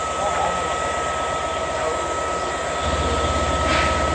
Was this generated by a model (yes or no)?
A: no